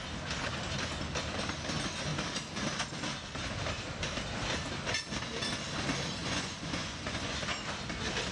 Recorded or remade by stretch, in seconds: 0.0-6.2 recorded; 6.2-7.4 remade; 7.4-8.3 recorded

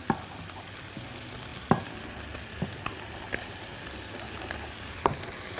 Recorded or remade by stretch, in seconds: 0.0-5.6 recorded